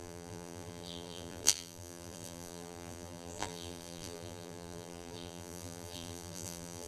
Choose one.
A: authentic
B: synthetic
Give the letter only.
B